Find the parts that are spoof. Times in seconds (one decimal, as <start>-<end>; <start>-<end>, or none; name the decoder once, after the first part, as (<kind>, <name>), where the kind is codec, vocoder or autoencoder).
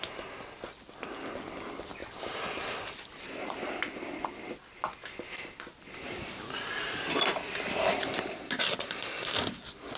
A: 2.0-3.8 (vocoder, BigVGAN v2)